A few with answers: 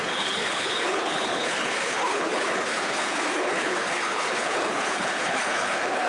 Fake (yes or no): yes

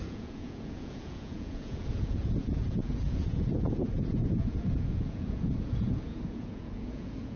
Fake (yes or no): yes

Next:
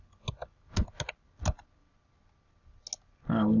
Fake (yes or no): no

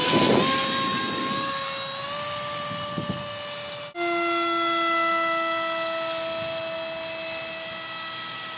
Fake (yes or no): no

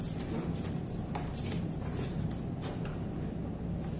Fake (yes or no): no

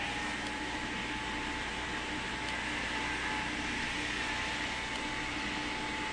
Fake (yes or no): no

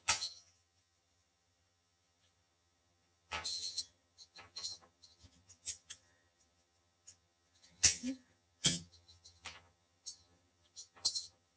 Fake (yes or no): yes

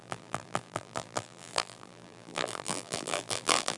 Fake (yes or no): yes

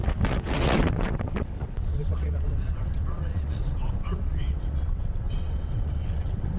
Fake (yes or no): yes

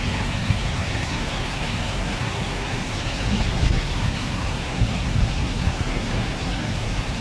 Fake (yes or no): yes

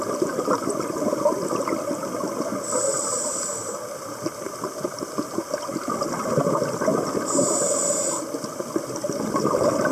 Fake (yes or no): no